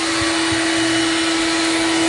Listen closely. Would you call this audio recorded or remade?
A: recorded